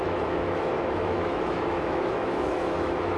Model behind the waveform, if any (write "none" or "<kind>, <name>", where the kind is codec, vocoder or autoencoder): autoencoder, DAC-VAE